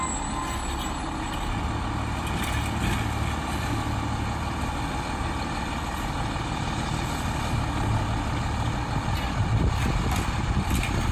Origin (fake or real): real